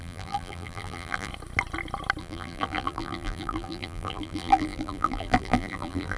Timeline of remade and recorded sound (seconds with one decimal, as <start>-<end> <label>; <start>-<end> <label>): 0.0-1.3 remade; 1.3-2.2 recorded; 2.2-6.2 remade